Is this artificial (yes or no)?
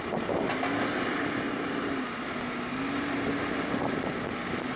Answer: no